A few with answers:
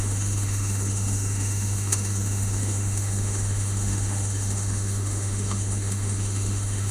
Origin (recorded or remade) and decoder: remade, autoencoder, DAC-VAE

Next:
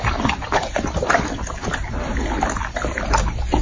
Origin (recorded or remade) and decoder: recorded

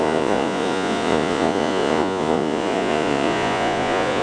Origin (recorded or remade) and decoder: remade, vocoder, Vocos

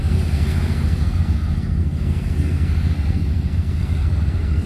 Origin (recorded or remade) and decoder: remade, codec, SNAC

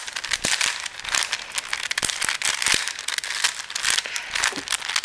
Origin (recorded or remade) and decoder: recorded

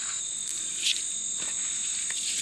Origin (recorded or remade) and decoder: recorded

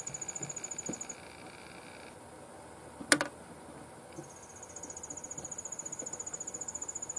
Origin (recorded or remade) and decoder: recorded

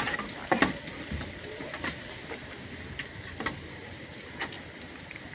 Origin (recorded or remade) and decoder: remade, vocoder, BigVGAN v2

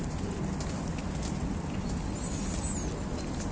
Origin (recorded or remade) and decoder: recorded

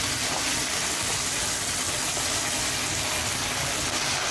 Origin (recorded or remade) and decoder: recorded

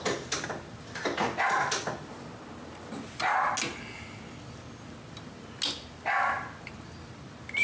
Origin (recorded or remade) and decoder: recorded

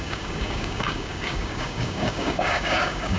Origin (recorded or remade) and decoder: remade, codec, DAC